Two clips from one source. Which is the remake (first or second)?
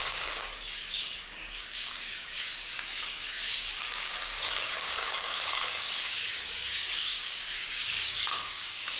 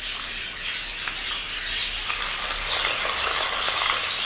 first